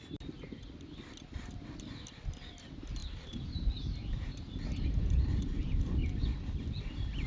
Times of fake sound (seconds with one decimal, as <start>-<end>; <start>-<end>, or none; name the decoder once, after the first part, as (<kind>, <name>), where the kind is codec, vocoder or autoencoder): 3.0-5.9 (vocoder, BigVGAN v2)